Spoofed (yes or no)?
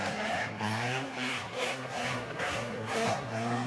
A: yes